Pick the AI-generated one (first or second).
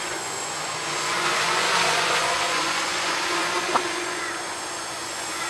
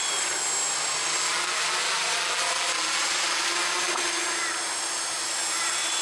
first